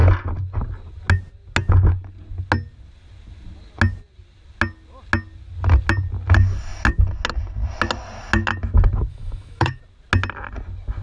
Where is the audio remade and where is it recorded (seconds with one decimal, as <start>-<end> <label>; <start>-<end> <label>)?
0.0-9.1 recorded; 9.1-9.8 remade; 9.8-11.0 recorded